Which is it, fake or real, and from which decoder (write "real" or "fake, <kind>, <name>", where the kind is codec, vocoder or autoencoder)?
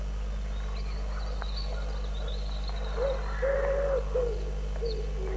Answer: real